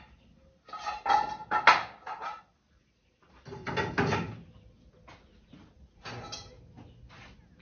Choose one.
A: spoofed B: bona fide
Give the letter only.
B